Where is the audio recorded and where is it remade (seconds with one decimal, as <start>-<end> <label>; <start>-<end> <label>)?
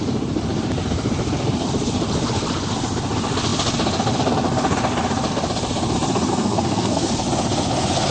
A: 0.0-6.3 recorded; 6.3-7.1 remade; 7.1-8.1 recorded